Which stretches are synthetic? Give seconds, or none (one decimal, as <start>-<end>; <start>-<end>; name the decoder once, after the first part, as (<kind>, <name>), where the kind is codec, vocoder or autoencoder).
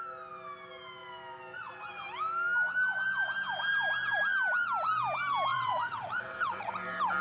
5.5-6.7 (vocoder, WaveNeXt)